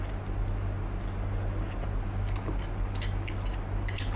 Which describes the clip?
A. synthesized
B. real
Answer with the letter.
B